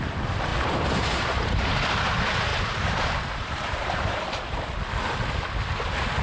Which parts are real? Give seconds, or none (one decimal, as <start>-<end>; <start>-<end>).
0.0-0.5; 1.8-2.5; 4.7-6.2

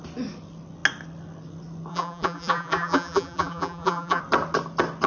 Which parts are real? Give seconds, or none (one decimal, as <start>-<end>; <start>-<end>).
0.0-1.9; 4.2-5.1